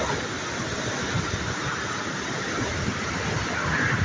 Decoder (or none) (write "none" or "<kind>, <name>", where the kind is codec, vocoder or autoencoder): none